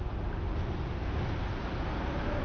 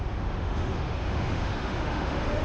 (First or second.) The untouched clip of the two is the first